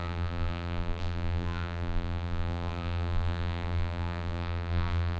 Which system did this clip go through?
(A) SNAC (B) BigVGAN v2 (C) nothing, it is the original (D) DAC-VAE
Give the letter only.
B